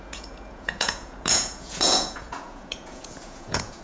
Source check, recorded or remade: remade